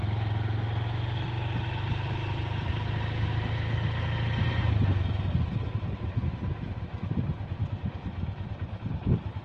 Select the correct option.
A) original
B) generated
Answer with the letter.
A